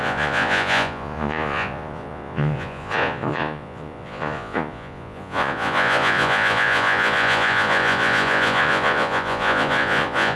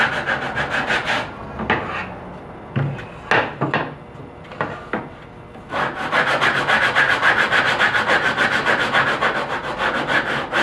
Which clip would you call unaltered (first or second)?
second